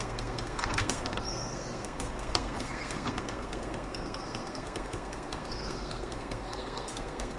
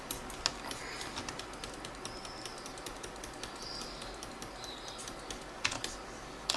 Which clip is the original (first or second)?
second